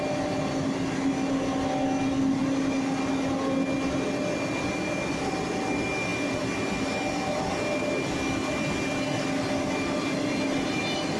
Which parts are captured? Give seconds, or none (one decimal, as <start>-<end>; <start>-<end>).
0.0-11.2